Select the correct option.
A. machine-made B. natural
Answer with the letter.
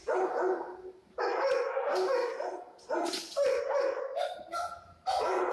B